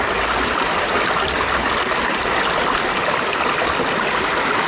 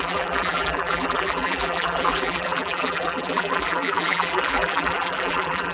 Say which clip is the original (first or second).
first